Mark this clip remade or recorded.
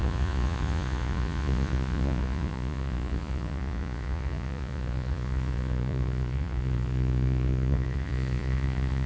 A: remade